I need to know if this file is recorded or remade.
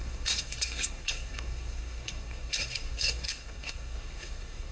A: remade